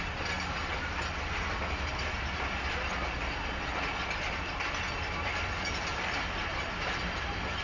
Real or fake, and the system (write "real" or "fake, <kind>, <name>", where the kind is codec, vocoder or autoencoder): real